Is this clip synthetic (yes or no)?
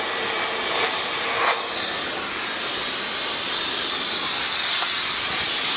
no